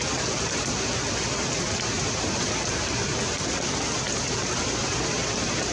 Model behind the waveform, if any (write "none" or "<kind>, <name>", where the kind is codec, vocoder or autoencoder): none